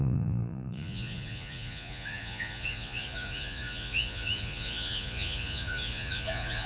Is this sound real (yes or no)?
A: no